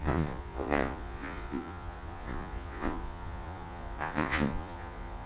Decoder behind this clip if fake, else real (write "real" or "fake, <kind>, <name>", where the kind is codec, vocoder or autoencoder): fake, vocoder, Vocos